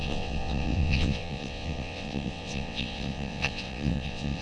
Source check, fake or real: fake